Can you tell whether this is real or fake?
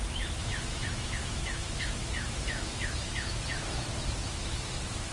fake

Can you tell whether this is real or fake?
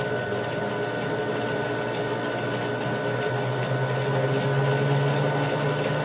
real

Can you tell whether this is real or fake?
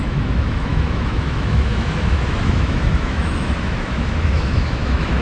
fake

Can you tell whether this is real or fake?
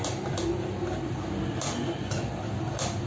real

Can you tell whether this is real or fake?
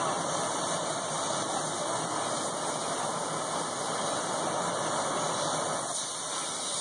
real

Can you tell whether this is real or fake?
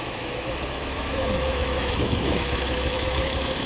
fake